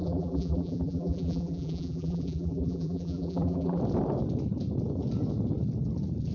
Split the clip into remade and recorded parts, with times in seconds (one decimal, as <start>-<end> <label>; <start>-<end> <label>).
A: 0.0-3.8 remade; 3.8-6.3 recorded